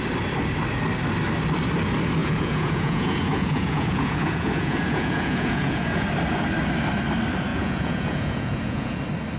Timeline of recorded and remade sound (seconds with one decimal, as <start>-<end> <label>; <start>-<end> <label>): 0.0-2.2 recorded; 2.2-6.1 remade; 6.1-7.5 recorded; 7.5-9.0 remade; 9.0-9.4 recorded